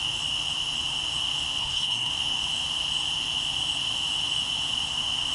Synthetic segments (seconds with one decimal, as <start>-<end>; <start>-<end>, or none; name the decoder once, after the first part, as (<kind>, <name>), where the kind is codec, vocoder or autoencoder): 1.6-2.1 (codec, SNAC)